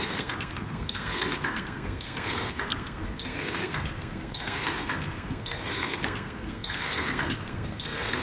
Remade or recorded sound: remade